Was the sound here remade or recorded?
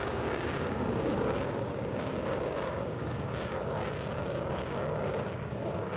remade